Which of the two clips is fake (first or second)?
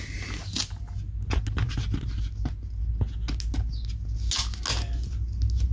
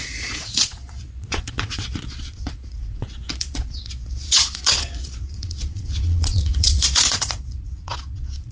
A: second